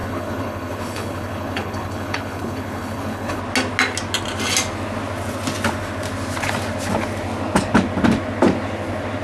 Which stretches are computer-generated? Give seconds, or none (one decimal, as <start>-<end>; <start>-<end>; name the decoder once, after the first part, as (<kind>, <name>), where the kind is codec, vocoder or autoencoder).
0.0-3.4 (codec, HILCodec)